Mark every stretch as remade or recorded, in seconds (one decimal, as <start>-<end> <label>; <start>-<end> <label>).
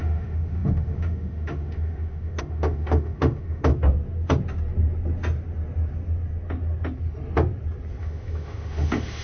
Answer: 0.0-3.7 remade; 3.7-8.0 recorded; 8.0-9.2 remade